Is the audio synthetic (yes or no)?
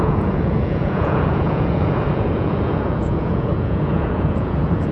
yes